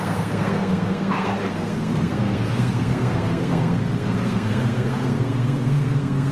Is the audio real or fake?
fake